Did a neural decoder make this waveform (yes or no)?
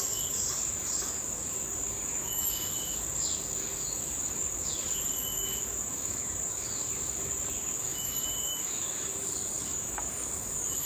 yes